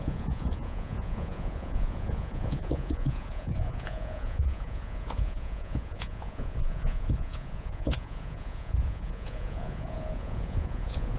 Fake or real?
fake